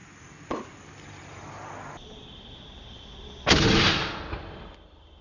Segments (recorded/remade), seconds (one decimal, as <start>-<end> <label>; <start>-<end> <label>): 0.0-5.2 recorded